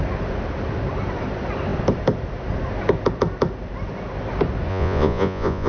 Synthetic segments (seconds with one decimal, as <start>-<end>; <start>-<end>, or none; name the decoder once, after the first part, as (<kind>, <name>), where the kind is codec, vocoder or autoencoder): 4.7-5.7 (vocoder, Vocos)